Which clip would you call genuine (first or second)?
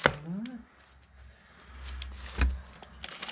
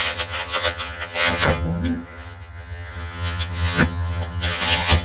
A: first